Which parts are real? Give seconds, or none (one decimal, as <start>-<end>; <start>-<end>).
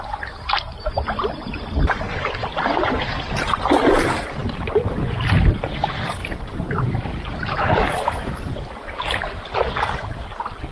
0.0-6.2; 6.9-10.7